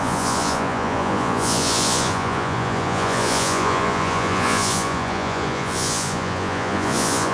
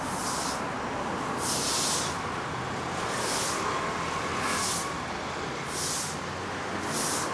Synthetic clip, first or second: first